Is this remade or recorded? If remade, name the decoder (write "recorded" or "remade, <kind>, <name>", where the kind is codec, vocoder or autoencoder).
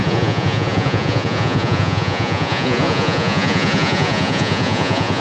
remade, vocoder, Vocos